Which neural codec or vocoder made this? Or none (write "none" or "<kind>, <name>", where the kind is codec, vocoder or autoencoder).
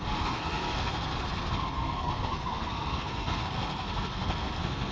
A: codec, SNAC